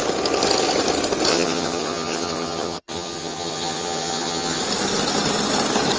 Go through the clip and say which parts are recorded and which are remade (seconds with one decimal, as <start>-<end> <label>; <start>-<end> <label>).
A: 0.0-1.3 recorded; 1.3-4.6 remade; 4.6-6.0 recorded